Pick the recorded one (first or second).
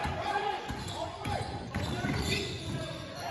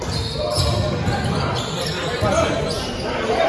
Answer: second